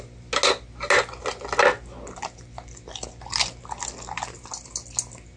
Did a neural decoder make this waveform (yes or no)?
no